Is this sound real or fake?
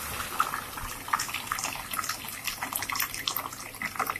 real